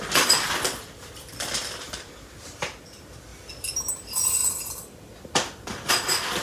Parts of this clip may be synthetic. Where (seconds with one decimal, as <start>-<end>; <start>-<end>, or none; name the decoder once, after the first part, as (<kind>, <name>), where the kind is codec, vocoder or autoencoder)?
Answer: 0.0-3.3 (vocoder, BigVGAN v2); 3.9-4.4; 5.9-6.4